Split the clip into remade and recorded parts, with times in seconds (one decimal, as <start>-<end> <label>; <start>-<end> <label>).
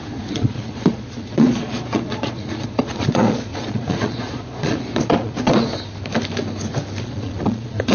0.0-5.7 remade; 5.7-7.0 recorded; 7.0-7.9 remade